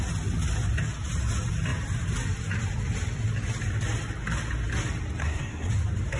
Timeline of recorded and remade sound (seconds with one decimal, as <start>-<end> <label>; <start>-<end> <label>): 0.0-5.2 recorded; 5.2-5.7 remade; 5.7-6.2 recorded